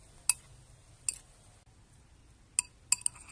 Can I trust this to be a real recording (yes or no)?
yes